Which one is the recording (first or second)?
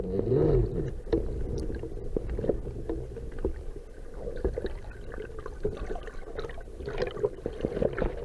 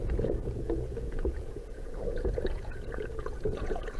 first